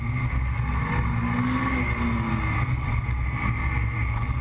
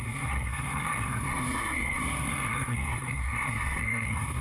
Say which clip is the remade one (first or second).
second